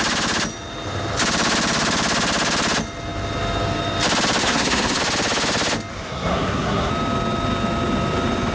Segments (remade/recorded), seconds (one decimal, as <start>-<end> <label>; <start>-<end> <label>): 0.0-4.4 recorded; 4.4-5.0 remade; 5.0-5.9 recorded; 5.9-6.9 remade; 6.9-8.5 recorded